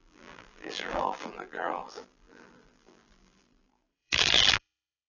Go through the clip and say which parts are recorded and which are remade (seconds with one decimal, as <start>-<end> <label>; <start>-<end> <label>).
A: 0.0-5.1 remade